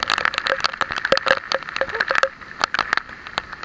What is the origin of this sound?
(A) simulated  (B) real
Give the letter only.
B